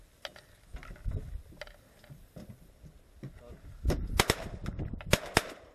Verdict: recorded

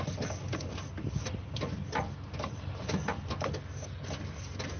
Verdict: recorded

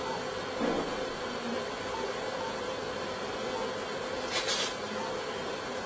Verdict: recorded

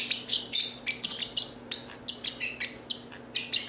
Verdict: recorded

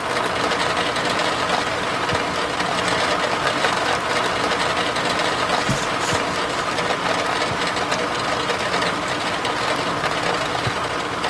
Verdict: recorded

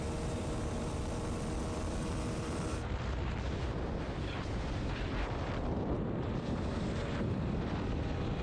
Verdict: remade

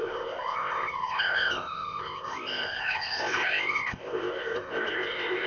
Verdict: remade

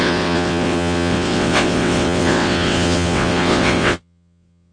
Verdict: remade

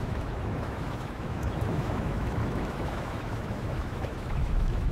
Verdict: remade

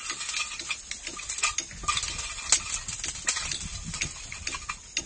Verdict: recorded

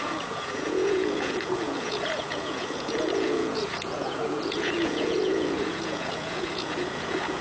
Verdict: remade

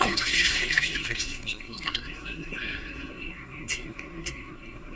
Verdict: remade